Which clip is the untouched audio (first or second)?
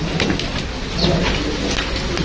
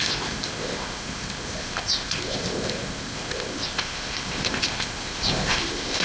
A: first